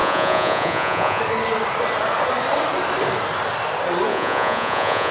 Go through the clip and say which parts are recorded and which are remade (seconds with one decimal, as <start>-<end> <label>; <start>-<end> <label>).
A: 0.0-1.2 remade; 1.2-4.1 recorded; 4.1-5.1 remade

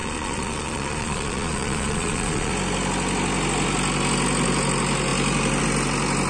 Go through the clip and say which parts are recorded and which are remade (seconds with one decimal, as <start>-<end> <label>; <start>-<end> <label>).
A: 0.0-2.5 remade; 2.5-6.3 recorded

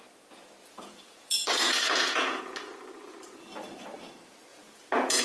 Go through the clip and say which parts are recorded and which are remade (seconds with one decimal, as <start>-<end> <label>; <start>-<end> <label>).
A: 0.0-0.6 recorded; 0.6-2.4 remade; 2.4-4.5 recorded; 4.5-5.2 remade